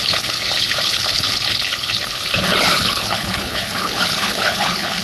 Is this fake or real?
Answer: fake